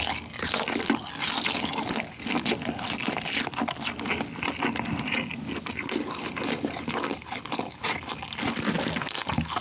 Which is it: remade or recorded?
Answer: recorded